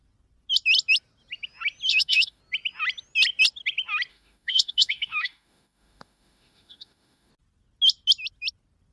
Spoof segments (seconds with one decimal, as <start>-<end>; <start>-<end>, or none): 1.9-2.4; 4.1-7.3